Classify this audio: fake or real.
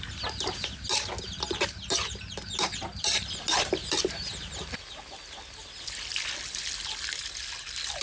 real